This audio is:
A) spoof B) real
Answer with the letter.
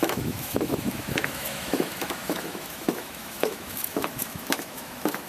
A